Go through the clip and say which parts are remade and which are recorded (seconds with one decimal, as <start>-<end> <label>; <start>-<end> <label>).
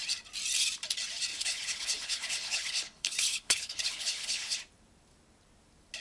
0.0-1.3 recorded; 1.3-4.6 remade; 4.6-6.0 recorded